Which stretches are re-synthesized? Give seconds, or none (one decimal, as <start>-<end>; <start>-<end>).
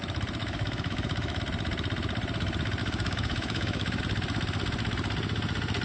0.4-1.4; 2.8-4.0